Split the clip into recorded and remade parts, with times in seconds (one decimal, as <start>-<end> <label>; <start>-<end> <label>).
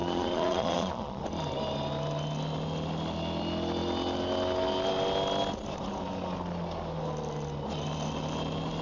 0.0-1.2 remade; 1.2-8.8 recorded